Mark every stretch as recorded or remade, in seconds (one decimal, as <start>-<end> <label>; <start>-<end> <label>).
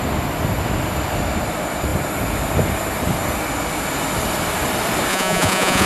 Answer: 0.0-5.1 recorded; 5.1-5.9 remade